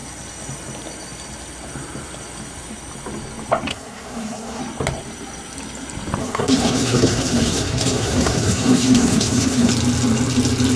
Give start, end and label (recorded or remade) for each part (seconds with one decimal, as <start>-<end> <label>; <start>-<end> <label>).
0.0-3.7 recorded; 3.7-4.6 remade; 4.6-6.2 recorded; 6.2-9.7 remade; 9.7-10.8 recorded

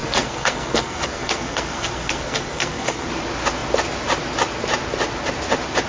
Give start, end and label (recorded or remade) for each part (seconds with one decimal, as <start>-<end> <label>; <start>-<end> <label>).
0.0-3.1 remade; 3.1-5.9 recorded

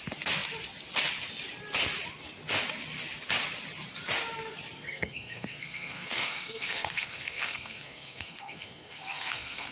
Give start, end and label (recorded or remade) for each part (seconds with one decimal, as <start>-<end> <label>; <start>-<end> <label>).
0.0-4.9 recorded; 4.9-9.7 remade

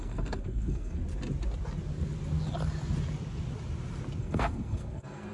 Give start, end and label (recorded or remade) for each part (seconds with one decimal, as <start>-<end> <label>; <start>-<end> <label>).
0.0-1.0 remade; 1.0-4.2 recorded; 4.2-5.3 remade

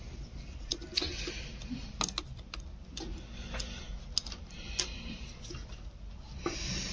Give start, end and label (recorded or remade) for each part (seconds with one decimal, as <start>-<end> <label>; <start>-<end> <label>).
0.0-6.9 recorded